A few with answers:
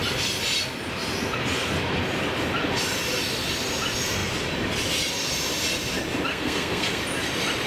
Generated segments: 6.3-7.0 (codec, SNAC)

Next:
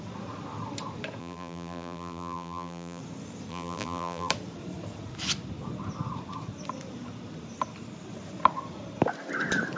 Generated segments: 1.2-3.0 (vocoder, BigVGAN v2); 3.5-4.3

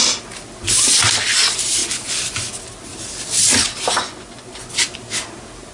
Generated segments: 1.8-2.5 (vocoder, Vocos); 4.0-4.7

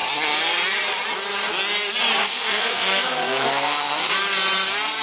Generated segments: 2.2-4.1 (codec, SNAC)

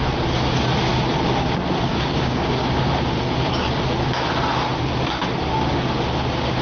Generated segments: 1.9-3.2 (codec, DAC)

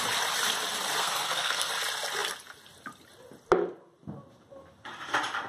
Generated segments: 1.0-1.7 (codec, SNAC)

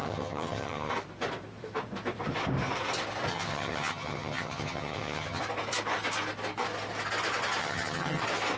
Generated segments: 0.0-0.9 (vocoder, HiFi-GAN); 3.3-5.4; 7.6-8.2

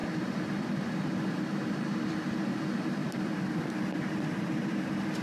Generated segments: 0.0-1.4 (vocoder, BigVGAN v2); 3.0-4.8